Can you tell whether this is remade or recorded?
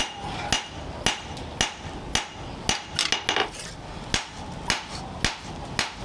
recorded